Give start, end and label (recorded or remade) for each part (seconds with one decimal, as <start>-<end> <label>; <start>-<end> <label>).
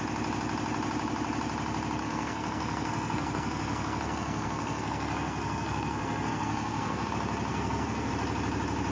0.0-2.0 recorded; 2.0-7.1 remade; 7.1-7.5 recorded; 7.5-8.1 remade; 8.1-8.9 recorded